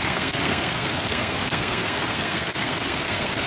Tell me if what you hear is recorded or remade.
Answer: remade